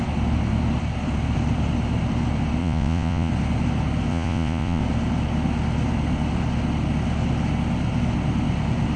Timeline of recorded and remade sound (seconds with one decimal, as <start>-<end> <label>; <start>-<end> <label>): 0.0-2.6 recorded; 2.6-3.3 remade; 3.3-4.1 recorded; 4.1-4.8 remade; 4.8-9.0 recorded